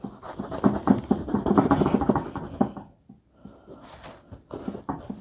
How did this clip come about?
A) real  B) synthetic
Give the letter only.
A